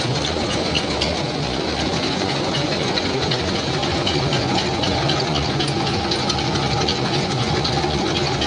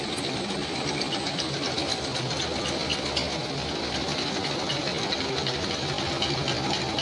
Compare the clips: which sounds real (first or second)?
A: second